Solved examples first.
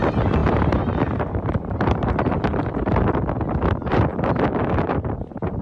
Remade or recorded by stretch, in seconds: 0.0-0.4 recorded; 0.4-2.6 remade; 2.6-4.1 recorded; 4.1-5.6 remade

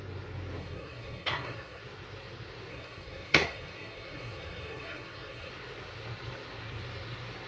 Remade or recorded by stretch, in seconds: 0.0-0.6 recorded; 0.6-1.8 remade; 1.8-2.7 recorded; 2.7-5.5 remade; 5.5-7.5 recorded